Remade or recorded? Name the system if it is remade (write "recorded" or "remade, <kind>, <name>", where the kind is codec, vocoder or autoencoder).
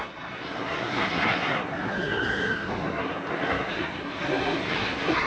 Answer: remade, codec, SNAC